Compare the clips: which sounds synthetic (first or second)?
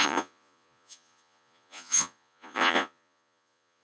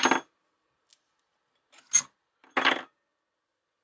first